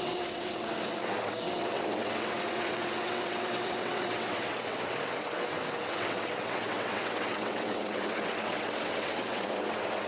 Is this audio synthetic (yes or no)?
yes